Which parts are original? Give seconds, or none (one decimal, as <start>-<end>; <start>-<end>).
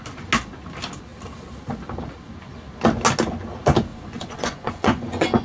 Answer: 0.0-3.9